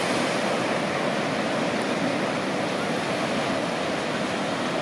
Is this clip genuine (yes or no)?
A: yes